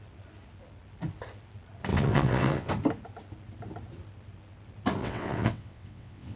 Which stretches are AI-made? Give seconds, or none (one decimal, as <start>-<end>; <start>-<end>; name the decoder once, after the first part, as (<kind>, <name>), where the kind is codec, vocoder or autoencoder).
1.9-2.7 (vocoder, WaveNeXt); 5.0-6.4